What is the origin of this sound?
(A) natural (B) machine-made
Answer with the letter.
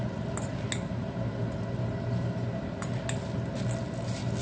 A